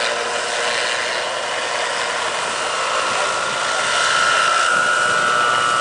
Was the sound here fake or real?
real